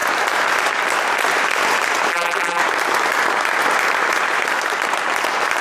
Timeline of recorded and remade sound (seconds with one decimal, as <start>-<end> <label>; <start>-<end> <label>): 0.0-2.1 recorded; 2.1-2.6 remade; 2.6-5.6 recorded